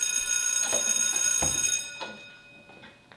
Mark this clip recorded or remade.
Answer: recorded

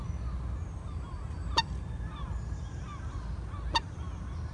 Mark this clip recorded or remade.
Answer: recorded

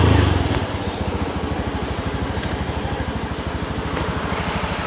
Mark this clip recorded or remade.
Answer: recorded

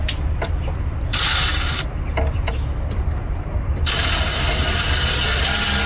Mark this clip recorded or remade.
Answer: recorded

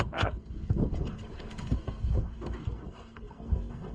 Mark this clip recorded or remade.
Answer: remade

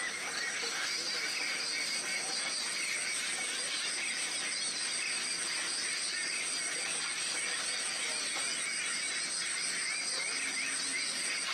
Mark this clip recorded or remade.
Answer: recorded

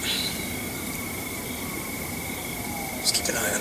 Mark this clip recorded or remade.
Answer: remade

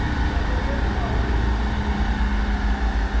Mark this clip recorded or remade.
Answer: recorded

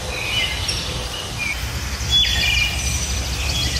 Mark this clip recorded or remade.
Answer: recorded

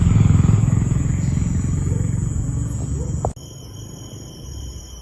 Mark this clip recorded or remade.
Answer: recorded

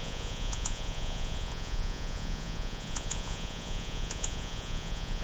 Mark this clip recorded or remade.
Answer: remade